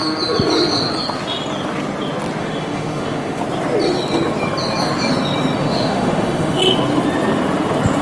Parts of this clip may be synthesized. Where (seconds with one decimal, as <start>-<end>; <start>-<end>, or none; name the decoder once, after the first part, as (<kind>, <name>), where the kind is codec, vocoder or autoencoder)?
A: 2.4-3.4 (autoencoder, DAC-VAE); 5.6-6.6